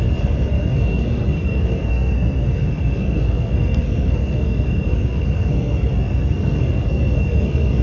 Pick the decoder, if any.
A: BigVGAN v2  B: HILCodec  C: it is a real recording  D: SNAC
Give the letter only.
D